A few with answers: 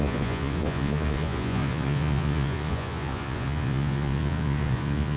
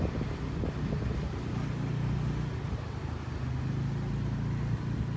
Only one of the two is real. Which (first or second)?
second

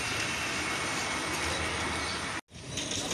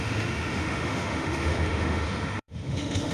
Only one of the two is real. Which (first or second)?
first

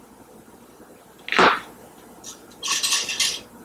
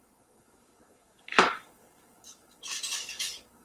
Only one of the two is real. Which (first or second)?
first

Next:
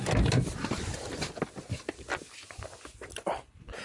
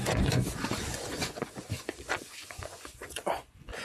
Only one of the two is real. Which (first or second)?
first